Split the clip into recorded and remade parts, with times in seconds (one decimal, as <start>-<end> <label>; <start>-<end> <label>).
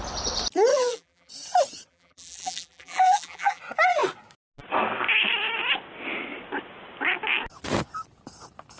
0.0-0.7 recorded; 0.7-1.3 remade; 1.3-1.9 recorded; 1.9-3.6 remade; 3.6-8.8 recorded